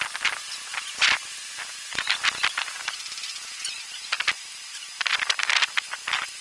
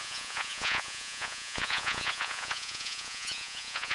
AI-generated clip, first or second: second